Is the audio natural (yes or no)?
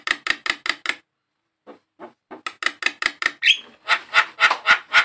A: yes